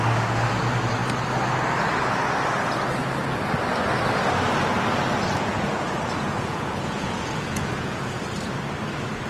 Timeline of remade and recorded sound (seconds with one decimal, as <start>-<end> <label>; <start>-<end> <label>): 0.0-5.5 recorded; 5.5-8.2 remade; 8.2-9.3 recorded